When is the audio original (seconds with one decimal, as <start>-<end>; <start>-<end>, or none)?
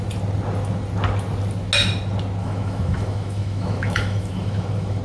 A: 0.0-2.4